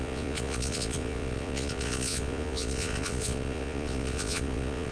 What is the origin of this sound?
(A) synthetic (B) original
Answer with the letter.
A